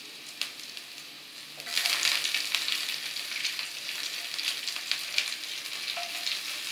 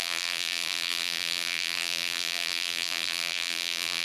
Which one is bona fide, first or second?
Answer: first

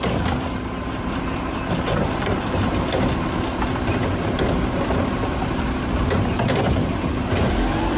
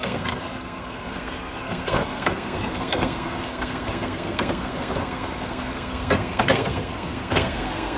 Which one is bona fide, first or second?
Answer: first